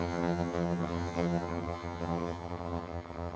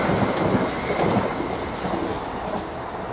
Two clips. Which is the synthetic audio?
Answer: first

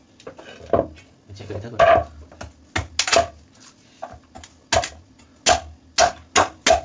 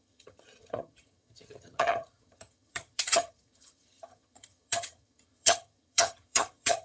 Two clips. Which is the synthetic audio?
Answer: second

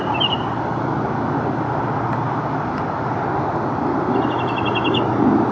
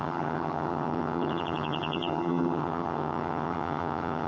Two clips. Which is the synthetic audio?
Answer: second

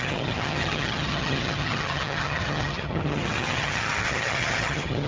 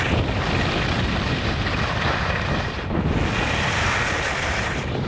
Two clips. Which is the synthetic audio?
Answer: first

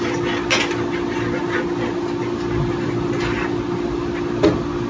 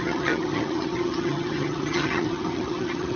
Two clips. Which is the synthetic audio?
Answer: second